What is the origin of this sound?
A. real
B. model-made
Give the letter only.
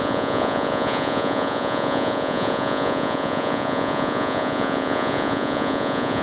B